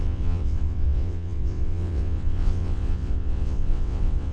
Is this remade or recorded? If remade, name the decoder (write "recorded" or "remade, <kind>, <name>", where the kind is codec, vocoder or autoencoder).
remade, vocoder, WaveNeXt